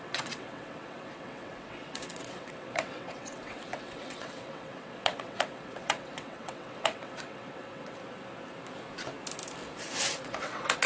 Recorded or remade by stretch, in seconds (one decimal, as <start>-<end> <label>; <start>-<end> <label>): 0.0-8.0 remade; 8.0-10.1 recorded; 10.1-10.9 remade